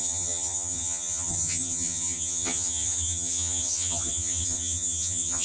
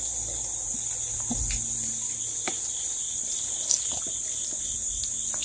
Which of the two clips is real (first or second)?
second